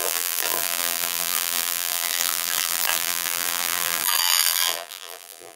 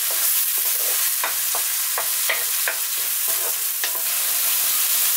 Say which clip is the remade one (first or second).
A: first